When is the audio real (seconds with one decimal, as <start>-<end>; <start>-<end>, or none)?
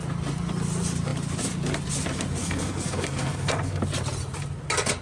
0.0-2.4; 3.8-5.0